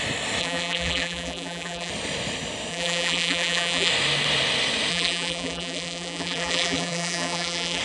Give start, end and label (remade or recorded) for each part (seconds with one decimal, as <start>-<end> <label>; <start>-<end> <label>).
0.0-0.4 recorded; 0.4-1.9 remade; 1.9-2.7 recorded; 2.7-3.9 remade; 3.9-4.9 recorded; 4.9-7.8 remade